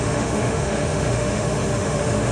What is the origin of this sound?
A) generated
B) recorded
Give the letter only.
A